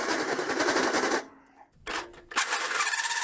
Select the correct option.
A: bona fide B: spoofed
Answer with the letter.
A